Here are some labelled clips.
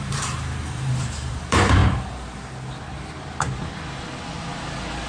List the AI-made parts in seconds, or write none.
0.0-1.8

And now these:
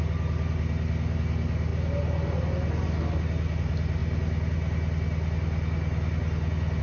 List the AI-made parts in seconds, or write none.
none

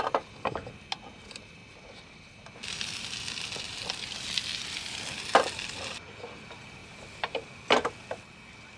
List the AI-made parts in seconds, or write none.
6.8-7.5

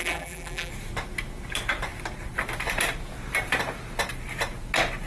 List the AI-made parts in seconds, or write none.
0.0-0.7

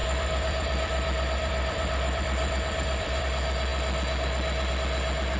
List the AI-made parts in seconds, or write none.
0.0-3.2

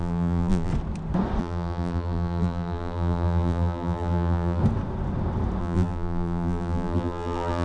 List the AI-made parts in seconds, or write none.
0.0-0.7; 1.4-4.6; 5.6-7.6